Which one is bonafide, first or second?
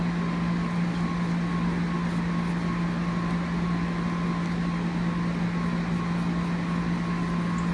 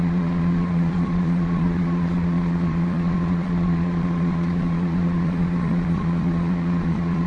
first